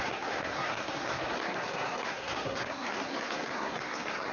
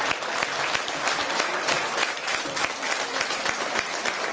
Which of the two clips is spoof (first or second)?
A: first